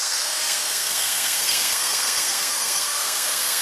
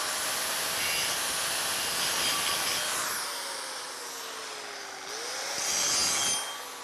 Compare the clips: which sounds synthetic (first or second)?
first